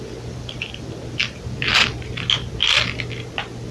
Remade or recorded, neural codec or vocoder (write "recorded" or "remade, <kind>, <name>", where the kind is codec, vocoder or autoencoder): recorded